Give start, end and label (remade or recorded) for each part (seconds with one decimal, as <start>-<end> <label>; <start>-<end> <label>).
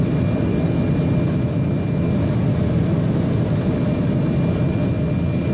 0.0-5.5 recorded